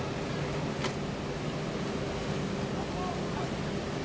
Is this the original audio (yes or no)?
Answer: yes